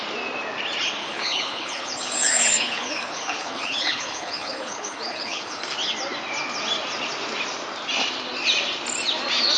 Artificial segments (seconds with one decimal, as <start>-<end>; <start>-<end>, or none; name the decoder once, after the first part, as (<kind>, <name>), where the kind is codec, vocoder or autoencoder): 1.0-5.6 (codec, HILCodec)